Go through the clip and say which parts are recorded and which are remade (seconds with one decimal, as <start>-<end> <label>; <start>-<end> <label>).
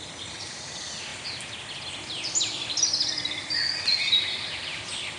0.0-5.2 remade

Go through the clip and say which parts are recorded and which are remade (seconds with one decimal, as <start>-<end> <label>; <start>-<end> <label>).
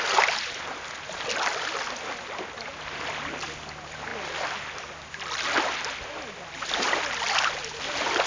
0.0-8.3 recorded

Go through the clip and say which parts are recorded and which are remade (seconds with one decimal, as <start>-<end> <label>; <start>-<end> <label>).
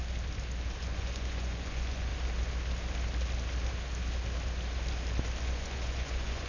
0.0-0.8 recorded; 0.8-2.1 remade; 2.1-5.4 recorded; 5.4-6.5 remade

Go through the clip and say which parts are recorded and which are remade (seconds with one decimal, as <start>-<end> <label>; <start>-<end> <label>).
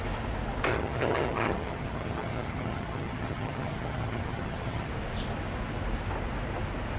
0.0-0.7 recorded; 0.7-4.9 remade; 4.9-7.0 recorded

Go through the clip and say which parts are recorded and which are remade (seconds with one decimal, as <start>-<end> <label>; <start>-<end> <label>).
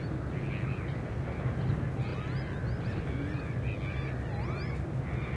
0.0-5.4 recorded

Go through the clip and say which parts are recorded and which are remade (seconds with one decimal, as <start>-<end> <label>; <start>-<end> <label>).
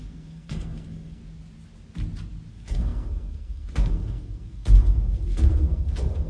0.0-1.2 remade; 1.2-2.5 recorded; 2.5-6.3 remade